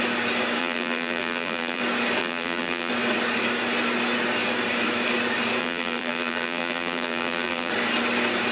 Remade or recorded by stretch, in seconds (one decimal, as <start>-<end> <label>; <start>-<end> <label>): 0.0-0.6 recorded; 0.6-1.8 remade; 1.8-2.2 recorded; 2.2-2.9 remade; 2.9-5.6 recorded; 5.6-7.7 remade; 7.7-8.5 recorded